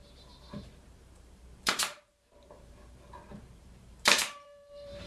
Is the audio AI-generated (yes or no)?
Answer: yes